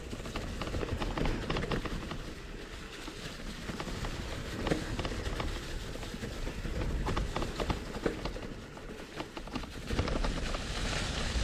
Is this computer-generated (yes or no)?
no